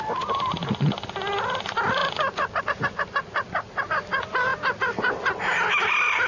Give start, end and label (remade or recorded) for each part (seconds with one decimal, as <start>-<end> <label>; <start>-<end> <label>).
0.0-6.3 recorded